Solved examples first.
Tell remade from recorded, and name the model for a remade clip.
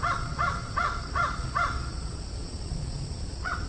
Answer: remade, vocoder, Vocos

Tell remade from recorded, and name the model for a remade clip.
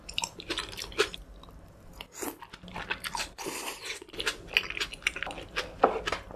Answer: recorded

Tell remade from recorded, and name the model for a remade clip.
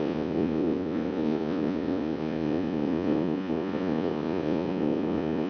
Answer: remade, vocoder, Vocos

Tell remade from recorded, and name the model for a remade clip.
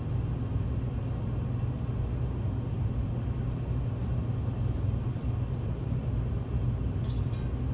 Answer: recorded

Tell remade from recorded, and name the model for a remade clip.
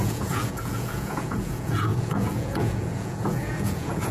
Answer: remade, vocoder, Vocos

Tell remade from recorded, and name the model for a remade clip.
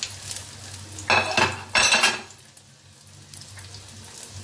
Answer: recorded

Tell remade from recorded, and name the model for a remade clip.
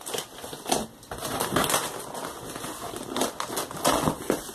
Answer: recorded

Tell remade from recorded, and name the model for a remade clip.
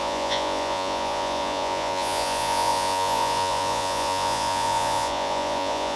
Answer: remade, vocoder, Vocos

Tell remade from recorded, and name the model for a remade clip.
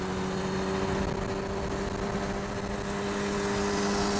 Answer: recorded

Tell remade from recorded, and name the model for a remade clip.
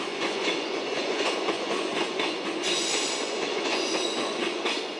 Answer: remade, vocoder, Vocos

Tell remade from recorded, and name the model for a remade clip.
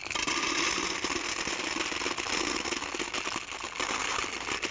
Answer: recorded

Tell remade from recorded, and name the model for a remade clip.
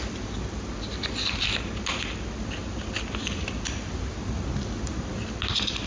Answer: recorded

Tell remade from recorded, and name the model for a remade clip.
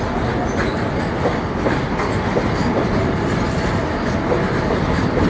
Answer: recorded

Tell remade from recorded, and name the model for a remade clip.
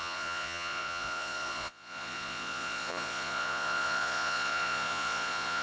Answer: remade, vocoder, Vocos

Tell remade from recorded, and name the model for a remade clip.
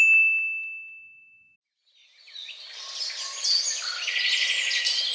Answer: recorded